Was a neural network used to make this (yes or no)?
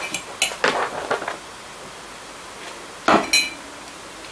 no